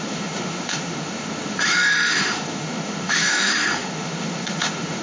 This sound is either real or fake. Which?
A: fake